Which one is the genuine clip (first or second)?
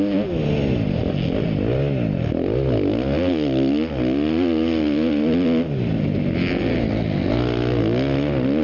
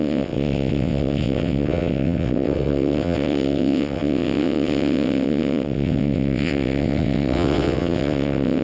first